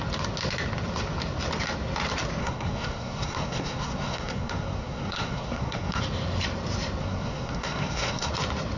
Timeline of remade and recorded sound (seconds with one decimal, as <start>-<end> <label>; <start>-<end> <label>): 0.0-2.4 recorded; 2.4-6.0 remade; 6.0-7.0 recorded; 7.0-8.3 remade; 8.3-8.8 recorded